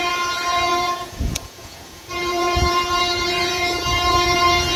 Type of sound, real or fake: fake